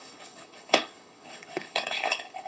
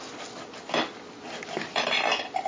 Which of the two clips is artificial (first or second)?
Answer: first